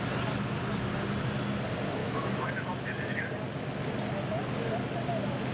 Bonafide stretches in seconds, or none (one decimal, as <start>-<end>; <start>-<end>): 0.0-2.0; 3.2-5.5